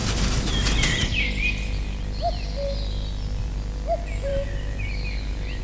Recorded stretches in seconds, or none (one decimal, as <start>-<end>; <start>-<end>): 0.0-5.6